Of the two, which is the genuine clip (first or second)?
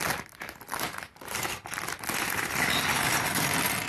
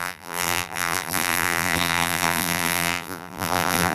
first